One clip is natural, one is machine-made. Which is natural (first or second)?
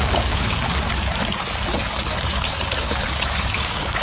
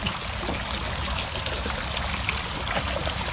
second